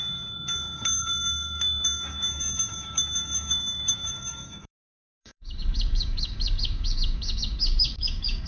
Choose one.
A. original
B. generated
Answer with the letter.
B